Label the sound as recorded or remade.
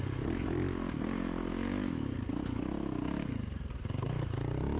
recorded